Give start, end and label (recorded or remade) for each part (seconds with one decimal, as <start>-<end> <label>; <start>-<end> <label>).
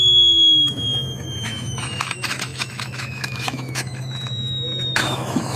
0.0-5.6 remade